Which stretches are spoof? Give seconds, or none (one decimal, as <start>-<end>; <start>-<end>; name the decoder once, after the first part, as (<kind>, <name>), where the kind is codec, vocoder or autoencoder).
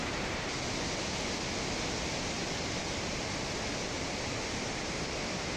none